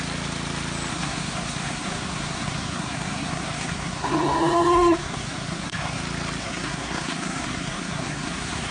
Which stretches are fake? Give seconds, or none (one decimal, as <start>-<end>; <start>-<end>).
0.9-6.0; 6.4-8.7